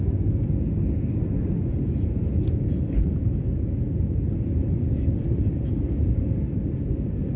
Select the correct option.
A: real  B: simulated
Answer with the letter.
B